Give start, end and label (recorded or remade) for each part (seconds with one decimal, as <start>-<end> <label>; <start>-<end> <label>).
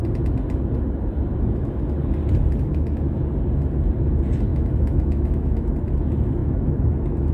0.0-1.3 recorded; 1.3-1.8 remade; 1.8-2.7 recorded; 2.7-3.2 remade; 3.2-4.5 recorded; 4.5-5.7 remade; 5.7-6.4 recorded; 6.4-7.3 remade